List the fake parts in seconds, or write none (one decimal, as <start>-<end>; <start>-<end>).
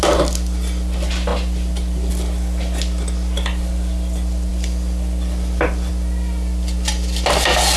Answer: none